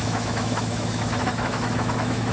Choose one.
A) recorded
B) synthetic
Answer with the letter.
B